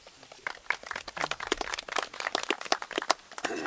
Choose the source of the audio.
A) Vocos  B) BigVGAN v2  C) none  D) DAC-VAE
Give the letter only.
C